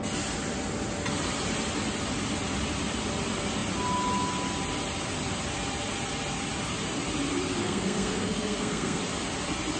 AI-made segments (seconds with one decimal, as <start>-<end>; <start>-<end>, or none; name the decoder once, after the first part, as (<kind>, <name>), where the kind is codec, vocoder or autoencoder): 7.6-9.0 (codec, SNAC)